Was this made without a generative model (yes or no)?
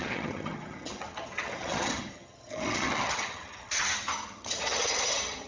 no